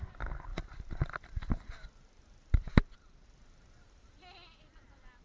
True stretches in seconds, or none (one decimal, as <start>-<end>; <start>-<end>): 0.0-5.2